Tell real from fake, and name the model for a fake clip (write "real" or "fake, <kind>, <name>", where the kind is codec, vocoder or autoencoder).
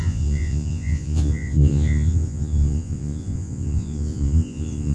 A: fake, vocoder, Vocos